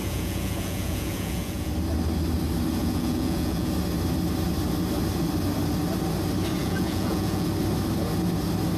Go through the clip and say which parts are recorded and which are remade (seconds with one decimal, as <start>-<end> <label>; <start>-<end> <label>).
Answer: 0.0-1.7 remade; 1.7-2.8 recorded; 2.8-3.7 remade; 3.7-6.6 recorded; 6.6-7.5 remade; 7.5-8.8 recorded